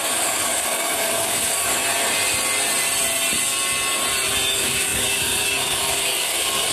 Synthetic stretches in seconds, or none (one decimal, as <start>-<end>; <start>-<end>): 0.0-1.8; 4.5-6.7